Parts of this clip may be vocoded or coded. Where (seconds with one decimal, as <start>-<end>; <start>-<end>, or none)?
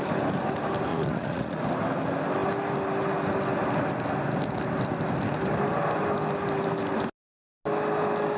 0.9-1.6